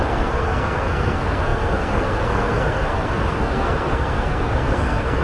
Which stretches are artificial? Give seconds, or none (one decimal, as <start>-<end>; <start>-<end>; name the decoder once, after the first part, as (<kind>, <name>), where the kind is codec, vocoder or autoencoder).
0.0-5.2 (codec, SNAC)